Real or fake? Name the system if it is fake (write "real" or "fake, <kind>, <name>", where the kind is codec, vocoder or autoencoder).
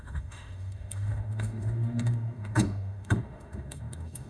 fake, autoencoder, DAC-VAE